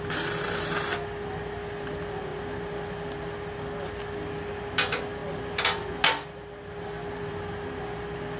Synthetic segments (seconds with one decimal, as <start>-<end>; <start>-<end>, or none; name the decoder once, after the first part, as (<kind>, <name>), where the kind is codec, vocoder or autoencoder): none